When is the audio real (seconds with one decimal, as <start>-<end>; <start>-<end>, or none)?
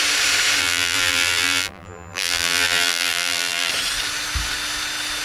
0.0-0.6; 3.7-5.2